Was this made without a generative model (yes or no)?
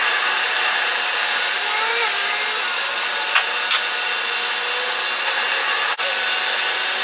yes